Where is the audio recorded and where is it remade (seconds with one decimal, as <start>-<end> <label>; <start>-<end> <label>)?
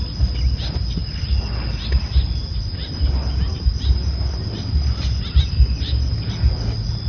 0.0-3.5 recorded; 3.5-6.4 remade; 6.4-7.1 recorded